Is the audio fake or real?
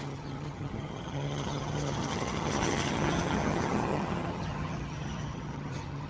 fake